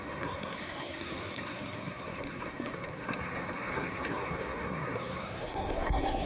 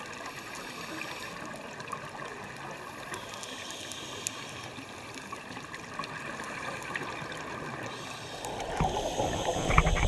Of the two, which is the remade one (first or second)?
first